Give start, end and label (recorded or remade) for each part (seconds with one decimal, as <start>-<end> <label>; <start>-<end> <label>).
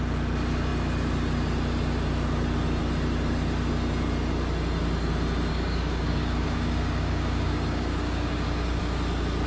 0.0-5.5 recorded; 5.5-8.8 remade; 8.8-9.5 recorded